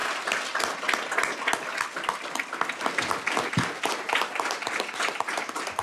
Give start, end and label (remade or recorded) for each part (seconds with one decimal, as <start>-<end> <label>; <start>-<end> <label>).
0.0-5.8 recorded